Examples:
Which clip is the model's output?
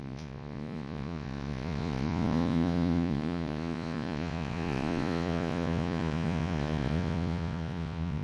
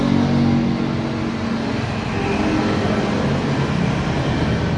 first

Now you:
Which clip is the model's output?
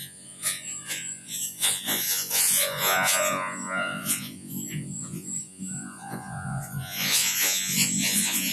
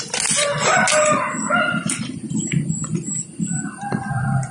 first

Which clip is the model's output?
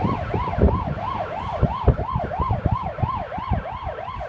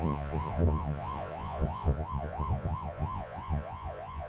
second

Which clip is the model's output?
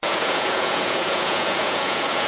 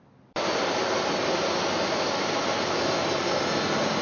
first